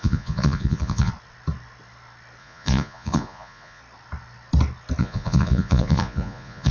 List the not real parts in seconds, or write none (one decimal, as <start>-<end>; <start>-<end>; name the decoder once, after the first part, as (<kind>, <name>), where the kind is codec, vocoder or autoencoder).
0.0-1.1 (vocoder, Vocos); 2.4-3.8; 5.0-6.7